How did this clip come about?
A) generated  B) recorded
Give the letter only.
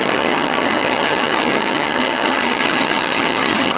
A